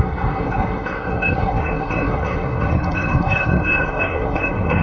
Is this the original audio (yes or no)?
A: no